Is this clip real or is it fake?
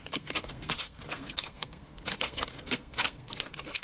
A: fake